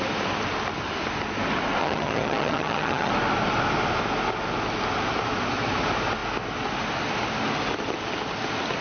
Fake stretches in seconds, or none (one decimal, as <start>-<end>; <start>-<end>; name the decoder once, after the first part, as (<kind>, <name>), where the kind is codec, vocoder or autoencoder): 1.8-3.1 (vocoder, HiFi-GAN)